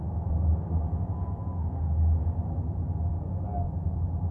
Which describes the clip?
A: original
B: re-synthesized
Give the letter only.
A